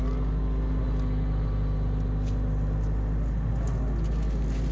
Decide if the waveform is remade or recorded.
recorded